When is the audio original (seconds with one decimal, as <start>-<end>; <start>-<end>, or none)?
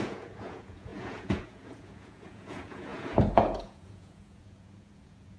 none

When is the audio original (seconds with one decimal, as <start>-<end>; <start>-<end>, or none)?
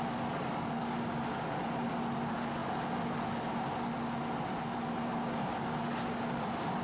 0.0-6.8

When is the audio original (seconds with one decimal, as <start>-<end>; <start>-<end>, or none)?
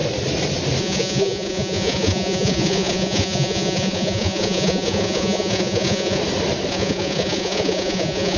0.0-0.8; 6.2-6.7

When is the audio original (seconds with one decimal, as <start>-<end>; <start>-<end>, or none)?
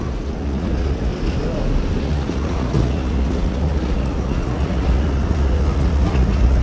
1.1-2.0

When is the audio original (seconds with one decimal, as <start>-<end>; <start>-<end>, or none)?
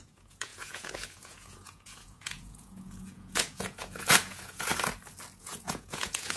4.7-5.4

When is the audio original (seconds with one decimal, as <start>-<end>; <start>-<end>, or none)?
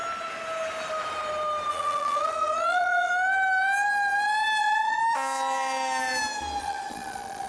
0.0-1.7; 3.1-4.6; 5.0-6.6